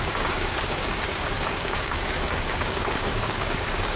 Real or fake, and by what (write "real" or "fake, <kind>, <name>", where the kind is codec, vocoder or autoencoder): fake, codec, DAC